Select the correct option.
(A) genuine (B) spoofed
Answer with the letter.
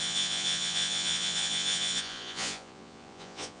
B